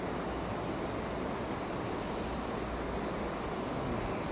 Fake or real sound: real